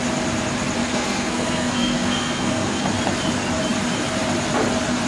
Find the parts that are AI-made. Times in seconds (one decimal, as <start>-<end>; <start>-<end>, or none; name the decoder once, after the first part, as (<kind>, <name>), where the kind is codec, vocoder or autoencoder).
0.8-2.8 (codec, SNAC)